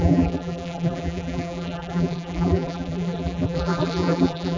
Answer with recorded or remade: remade